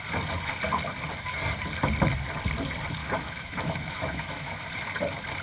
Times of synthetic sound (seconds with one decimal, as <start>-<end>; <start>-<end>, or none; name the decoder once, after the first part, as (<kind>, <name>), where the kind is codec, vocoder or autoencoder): 3.0-4.7 (autoencoder, DAC-VAE)